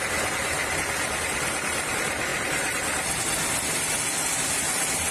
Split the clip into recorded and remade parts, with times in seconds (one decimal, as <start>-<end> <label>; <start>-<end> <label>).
0.0-5.1 recorded

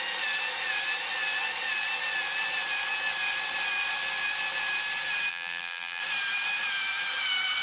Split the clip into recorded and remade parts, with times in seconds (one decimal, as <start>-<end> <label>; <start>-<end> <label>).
0.0-5.3 recorded; 5.3-6.0 remade; 6.0-7.6 recorded

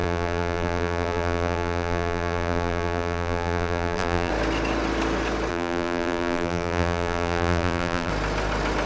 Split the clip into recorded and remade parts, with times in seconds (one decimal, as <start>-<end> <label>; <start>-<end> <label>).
0.0-4.3 remade; 4.3-5.5 recorded; 5.5-8.1 remade; 8.1-8.9 recorded